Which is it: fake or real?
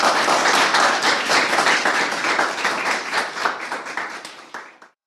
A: fake